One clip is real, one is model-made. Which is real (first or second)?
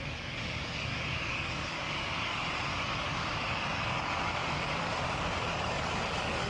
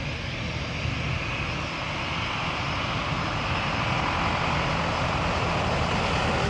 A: second